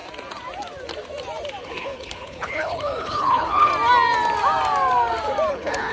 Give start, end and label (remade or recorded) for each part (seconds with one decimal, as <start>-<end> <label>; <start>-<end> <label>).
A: 0.0-1.6 recorded; 1.6-3.7 remade; 3.7-5.5 recorded; 5.5-5.9 remade